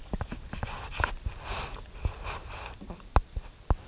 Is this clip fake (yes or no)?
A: no